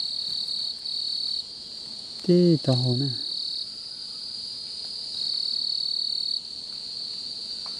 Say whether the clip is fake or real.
real